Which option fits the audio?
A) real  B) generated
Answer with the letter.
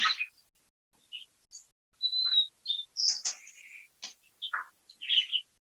A